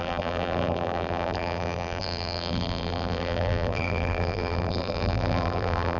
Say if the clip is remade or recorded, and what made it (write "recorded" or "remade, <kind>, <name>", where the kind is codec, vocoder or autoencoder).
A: remade, vocoder, BigVGAN v2